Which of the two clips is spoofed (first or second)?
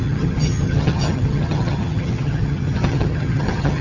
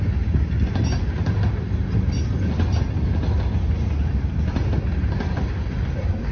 first